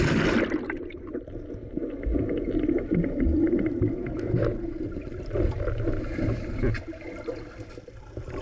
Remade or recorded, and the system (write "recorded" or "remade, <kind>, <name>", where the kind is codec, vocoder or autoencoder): recorded